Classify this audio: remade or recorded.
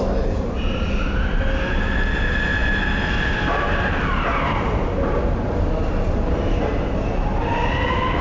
recorded